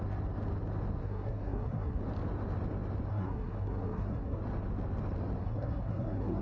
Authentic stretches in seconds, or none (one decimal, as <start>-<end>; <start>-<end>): 0.0-1.0; 2.0-3.1; 4.4-5.4